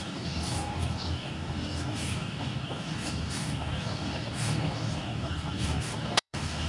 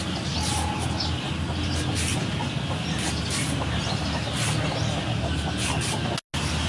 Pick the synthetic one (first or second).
first